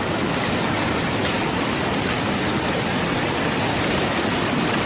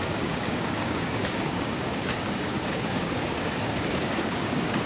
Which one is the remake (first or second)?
second